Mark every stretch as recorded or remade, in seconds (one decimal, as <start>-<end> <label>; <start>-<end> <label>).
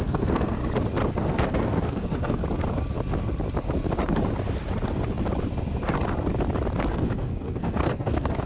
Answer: 0.0-0.6 remade; 0.6-1.1 recorded; 1.1-2.4 remade; 2.4-6.9 recorded; 6.9-8.5 remade